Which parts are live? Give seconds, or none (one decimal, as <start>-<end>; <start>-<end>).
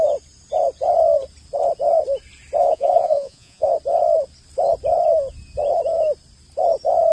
0.0-2.6; 3.7-7.1